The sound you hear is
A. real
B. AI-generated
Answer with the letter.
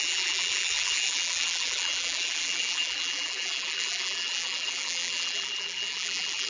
B